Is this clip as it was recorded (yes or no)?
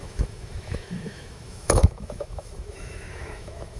no